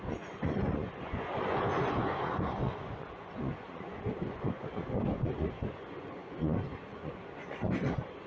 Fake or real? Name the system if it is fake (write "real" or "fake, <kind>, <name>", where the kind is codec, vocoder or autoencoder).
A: fake, vocoder, Vocos